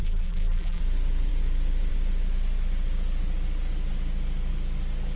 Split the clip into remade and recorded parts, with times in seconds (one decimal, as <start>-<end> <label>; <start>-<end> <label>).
0.0-0.8 remade; 0.8-5.2 recorded